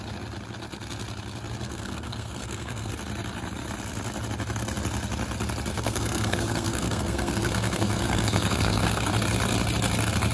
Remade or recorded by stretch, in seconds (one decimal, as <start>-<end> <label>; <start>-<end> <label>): 0.0-1.6 recorded; 1.6-2.9 remade; 2.9-5.7 recorded; 5.7-9.1 remade; 9.1-10.3 recorded